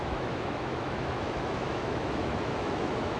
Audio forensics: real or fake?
fake